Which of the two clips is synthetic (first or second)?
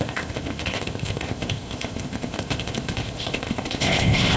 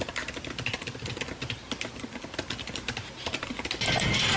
first